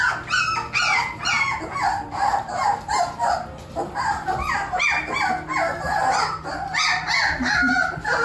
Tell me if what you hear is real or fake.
real